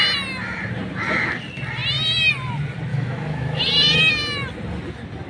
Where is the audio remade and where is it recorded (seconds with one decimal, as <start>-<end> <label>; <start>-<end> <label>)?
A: 0.0-2.9 recorded; 2.9-3.6 remade; 3.6-5.3 recorded